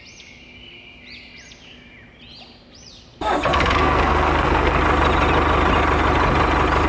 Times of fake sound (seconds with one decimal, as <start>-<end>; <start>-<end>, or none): 3.5-4.8